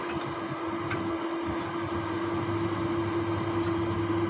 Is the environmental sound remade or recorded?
recorded